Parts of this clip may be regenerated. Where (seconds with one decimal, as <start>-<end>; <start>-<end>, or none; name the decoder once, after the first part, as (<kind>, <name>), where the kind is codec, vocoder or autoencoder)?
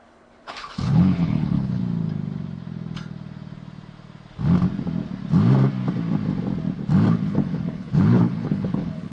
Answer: 0.0-1.8 (codec, HILCodec); 7.1-9.1